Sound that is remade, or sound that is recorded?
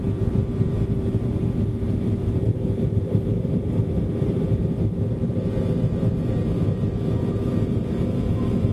remade